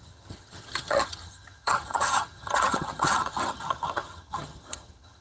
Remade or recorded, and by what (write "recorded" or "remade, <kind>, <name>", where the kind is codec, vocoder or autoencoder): remade, vocoder, HiFi-GAN